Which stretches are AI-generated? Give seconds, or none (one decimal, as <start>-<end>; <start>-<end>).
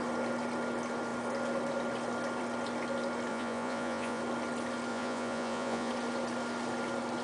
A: 3.3-4.2; 4.9-5.9